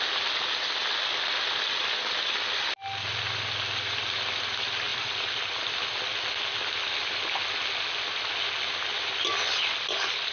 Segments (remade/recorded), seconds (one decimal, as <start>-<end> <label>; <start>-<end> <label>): 0.0-10.3 recorded